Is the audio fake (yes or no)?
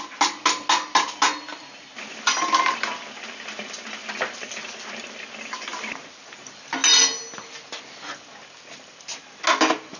no